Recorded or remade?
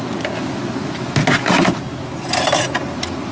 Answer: recorded